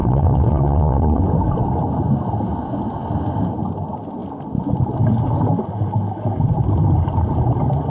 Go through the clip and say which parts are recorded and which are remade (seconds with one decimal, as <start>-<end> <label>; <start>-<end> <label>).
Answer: 0.0-1.2 remade; 1.2-7.9 recorded